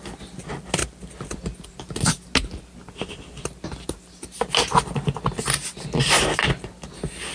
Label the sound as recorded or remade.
recorded